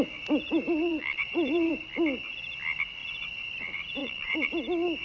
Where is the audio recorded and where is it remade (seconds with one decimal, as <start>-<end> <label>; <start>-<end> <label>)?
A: 0.0-0.9 recorded; 0.9-1.7 remade; 1.7-4.0 recorded; 4.0-4.5 remade; 4.5-5.0 recorded